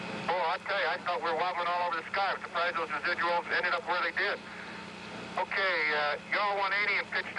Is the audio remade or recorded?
recorded